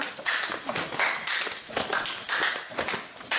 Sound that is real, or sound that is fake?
real